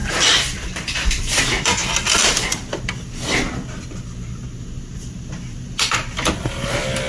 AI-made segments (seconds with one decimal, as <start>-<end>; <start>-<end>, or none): 0.0-1.4